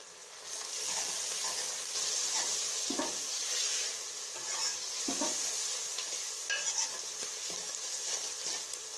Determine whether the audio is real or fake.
real